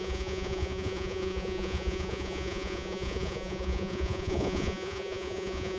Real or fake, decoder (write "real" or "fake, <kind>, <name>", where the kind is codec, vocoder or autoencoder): fake, vocoder, Vocos